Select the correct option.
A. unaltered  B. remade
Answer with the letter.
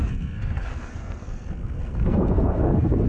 B